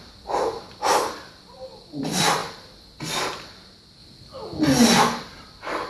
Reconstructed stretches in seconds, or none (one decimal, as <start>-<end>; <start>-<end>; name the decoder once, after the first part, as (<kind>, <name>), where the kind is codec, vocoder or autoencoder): none